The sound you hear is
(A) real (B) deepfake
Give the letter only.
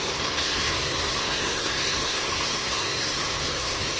B